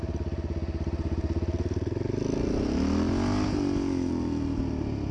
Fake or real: real